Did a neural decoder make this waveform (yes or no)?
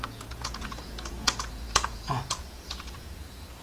yes